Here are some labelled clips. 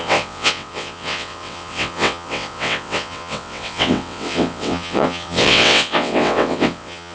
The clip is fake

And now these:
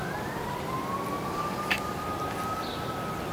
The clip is real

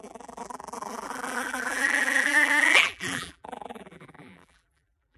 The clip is fake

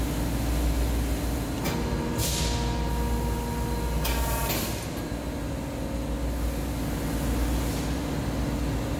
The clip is real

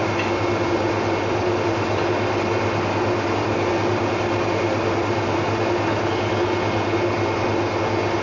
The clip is real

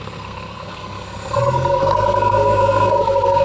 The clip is fake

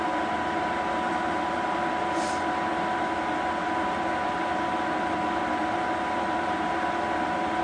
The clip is real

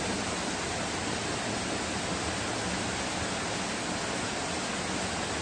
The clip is real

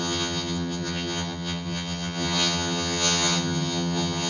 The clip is fake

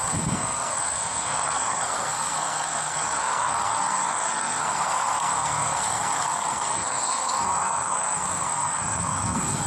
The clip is fake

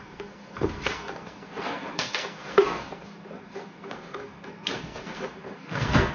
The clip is fake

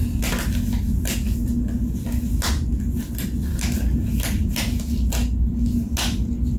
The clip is real